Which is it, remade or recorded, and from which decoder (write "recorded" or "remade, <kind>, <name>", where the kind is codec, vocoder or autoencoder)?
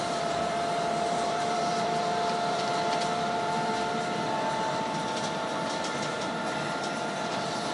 remade, vocoder, BigVGAN v2